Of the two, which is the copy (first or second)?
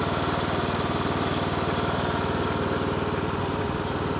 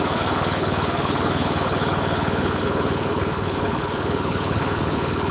second